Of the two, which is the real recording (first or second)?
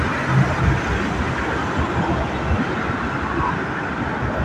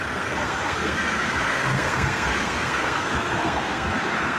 first